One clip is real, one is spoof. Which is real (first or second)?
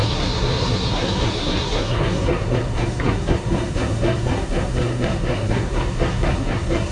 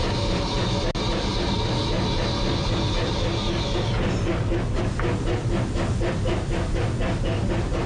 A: second